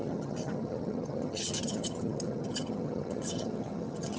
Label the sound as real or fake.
fake